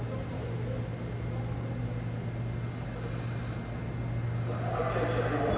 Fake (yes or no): no